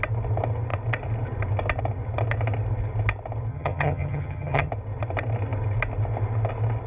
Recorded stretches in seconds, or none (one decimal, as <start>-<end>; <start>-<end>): 0.0-3.5; 4.7-6.9

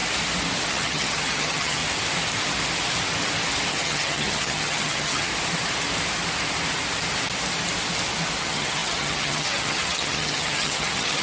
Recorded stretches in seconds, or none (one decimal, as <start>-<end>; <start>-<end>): 0.0-0.7; 1.8-3.7; 5.3-8.4

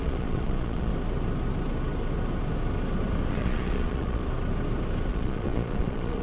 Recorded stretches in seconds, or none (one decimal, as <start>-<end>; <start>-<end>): 0.9-3.3; 4.2-5.1

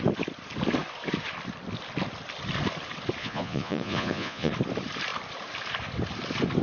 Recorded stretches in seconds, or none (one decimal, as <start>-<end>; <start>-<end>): 0.0-3.2; 4.5-6.6

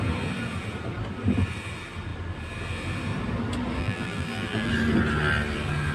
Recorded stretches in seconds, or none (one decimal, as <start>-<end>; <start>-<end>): 0.0-3.8; 4.7-5.9

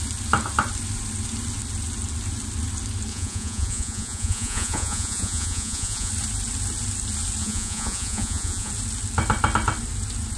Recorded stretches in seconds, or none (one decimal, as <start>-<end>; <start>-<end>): 0.0-3.1; 6.1-7.4; 8.7-10.4

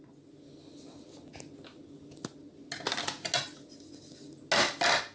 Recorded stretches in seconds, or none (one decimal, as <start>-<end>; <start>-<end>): 0.0-5.1